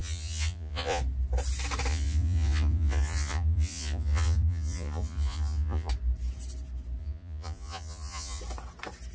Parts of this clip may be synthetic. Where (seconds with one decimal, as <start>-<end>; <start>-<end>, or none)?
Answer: 0.0-1.0; 1.9-5.9; 7.0-8.4